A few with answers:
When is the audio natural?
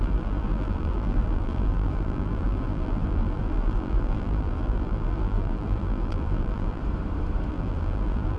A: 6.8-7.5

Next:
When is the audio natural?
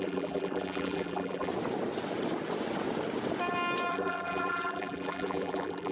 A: 1.5-3.9